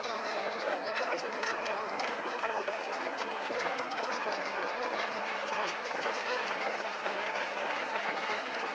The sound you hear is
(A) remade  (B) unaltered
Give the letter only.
A